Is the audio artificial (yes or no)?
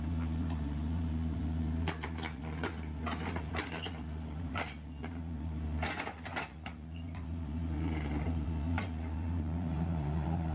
yes